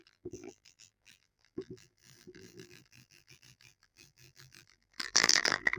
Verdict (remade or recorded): remade